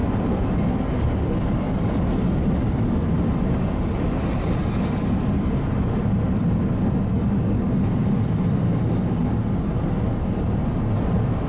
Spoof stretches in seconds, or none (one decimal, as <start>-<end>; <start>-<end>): none